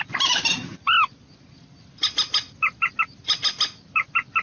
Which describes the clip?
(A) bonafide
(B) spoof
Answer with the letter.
A